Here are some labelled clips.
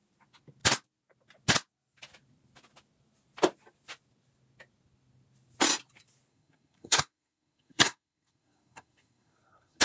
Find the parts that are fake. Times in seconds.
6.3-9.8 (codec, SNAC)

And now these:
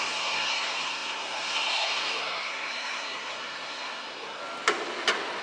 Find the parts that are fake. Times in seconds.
0.0-4.4 (codec, SNAC)

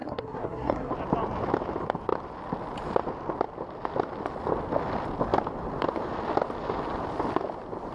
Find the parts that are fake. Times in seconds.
0.0-0.9 (codec, SNAC)